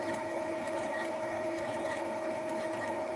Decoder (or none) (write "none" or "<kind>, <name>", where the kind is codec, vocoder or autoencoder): codec, HILCodec